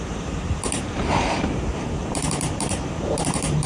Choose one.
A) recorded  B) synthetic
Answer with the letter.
B